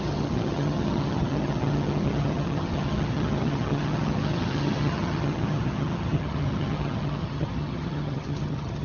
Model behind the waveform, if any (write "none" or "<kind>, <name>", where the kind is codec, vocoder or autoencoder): vocoder, HiFi-GAN